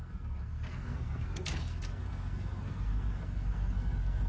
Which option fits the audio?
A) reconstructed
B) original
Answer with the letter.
A